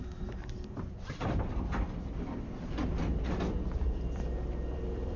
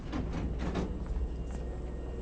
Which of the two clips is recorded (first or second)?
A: second